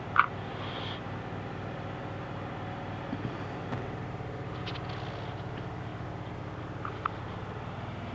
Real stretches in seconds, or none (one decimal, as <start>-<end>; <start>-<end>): 0.0-8.1